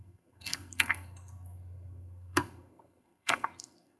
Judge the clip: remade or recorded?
remade